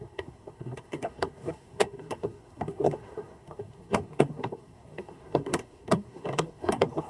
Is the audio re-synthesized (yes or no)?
yes